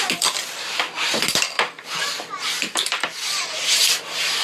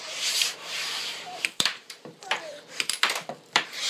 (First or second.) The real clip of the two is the first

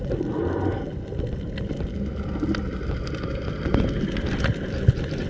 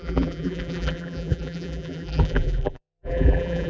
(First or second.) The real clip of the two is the first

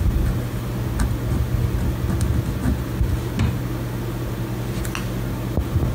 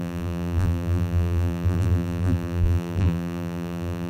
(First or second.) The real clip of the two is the first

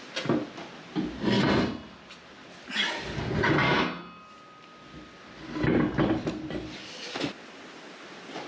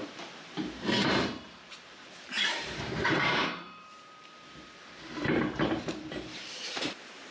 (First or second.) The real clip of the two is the first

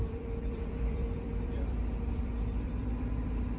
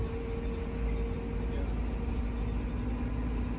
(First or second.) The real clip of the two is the second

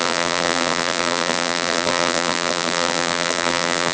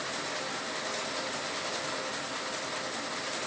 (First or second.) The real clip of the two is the second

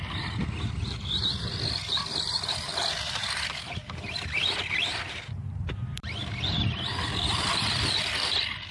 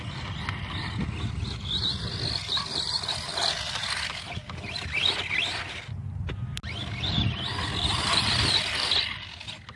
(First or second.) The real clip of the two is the second